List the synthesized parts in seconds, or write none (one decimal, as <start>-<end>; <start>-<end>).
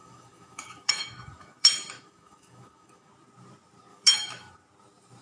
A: 0.0-3.1; 3.9-4.5